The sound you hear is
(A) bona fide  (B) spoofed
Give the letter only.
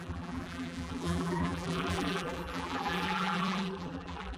B